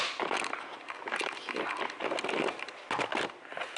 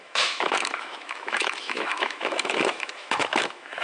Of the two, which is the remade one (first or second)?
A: second